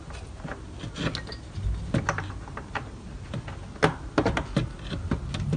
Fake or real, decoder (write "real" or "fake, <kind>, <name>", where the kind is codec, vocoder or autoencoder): real